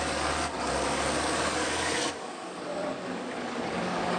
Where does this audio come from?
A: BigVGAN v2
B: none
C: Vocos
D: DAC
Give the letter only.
D